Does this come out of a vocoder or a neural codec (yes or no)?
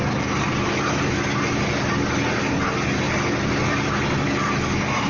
no